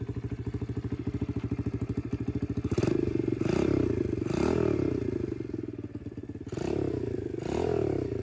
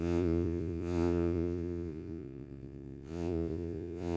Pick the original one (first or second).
first